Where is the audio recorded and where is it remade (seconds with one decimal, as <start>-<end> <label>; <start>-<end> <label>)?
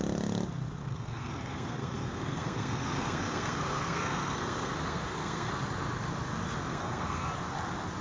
0.0-0.8 recorded; 0.8-5.5 remade; 5.5-6.7 recorded; 6.7-7.3 remade; 7.3-8.0 recorded